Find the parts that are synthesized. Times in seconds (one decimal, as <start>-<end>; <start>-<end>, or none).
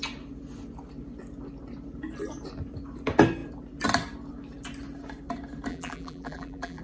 5.7-6.8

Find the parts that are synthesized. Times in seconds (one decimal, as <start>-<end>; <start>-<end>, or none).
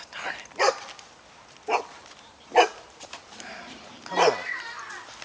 2.5-4.0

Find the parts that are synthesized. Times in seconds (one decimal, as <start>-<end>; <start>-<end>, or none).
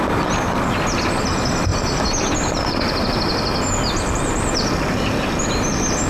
0.0-1.7; 2.3-3.3; 5.4-6.1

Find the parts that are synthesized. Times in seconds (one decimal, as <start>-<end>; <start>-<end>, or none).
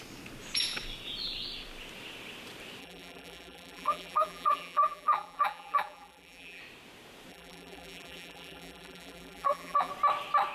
2.8-6.6; 7.3-9.9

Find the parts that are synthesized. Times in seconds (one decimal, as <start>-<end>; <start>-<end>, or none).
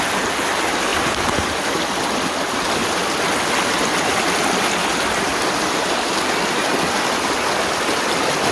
0.9-1.5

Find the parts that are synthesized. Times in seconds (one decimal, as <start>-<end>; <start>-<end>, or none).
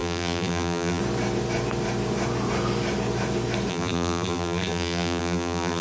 0.0-1.0; 3.7-5.8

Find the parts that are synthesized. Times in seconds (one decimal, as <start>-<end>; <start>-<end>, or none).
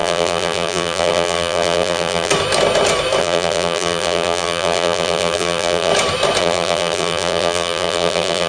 0.0-2.3; 3.2-5.9; 6.4-8.5